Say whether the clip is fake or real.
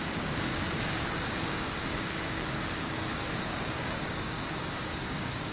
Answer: fake